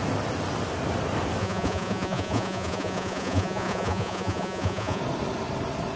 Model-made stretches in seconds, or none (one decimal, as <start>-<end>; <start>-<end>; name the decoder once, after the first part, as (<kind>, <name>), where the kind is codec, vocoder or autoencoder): 1.4-5.0 (vocoder, Vocos)